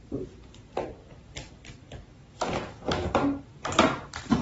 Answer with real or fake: real